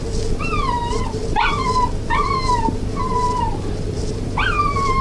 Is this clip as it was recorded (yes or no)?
yes